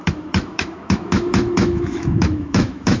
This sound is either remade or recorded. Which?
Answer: remade